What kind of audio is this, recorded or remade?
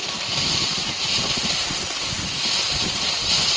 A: recorded